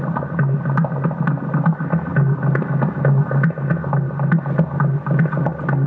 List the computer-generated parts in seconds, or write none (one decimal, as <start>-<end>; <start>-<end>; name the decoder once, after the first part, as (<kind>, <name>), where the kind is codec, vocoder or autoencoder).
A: none